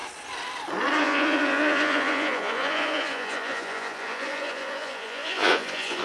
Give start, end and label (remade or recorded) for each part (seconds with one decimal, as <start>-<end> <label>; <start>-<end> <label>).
0.0-1.0 recorded; 1.0-6.0 remade